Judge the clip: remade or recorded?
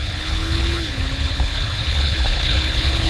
remade